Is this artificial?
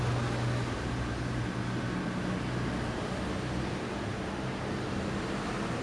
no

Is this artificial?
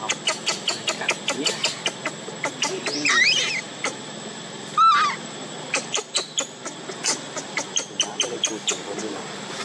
no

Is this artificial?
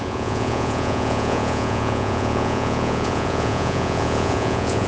yes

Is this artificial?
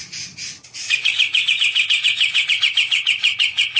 yes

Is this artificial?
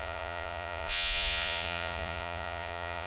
yes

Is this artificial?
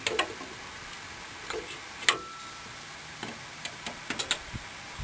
no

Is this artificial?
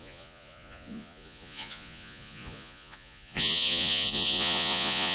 yes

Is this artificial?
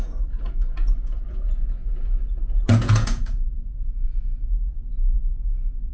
yes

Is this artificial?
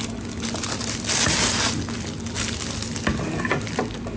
no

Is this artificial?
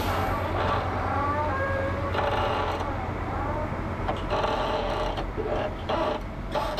no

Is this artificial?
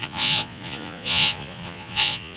yes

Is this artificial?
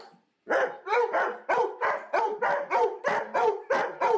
no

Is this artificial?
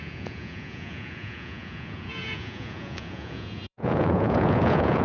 yes